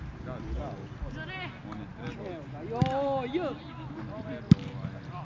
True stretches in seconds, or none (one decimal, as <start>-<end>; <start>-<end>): 0.0-5.2